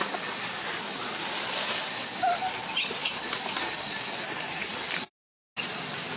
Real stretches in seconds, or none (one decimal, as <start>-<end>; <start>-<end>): 0.0-6.2